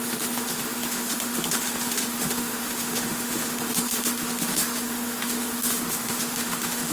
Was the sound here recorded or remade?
remade